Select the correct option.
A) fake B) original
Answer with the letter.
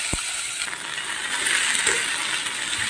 B